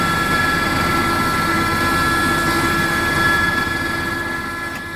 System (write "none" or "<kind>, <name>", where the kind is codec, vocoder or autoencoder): none